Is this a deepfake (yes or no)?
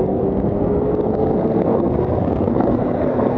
yes